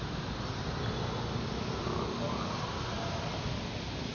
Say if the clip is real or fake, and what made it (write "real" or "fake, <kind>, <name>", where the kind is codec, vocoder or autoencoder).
real